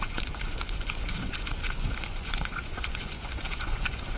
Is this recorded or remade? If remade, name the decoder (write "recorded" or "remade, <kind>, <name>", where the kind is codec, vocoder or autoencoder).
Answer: remade, vocoder, Vocos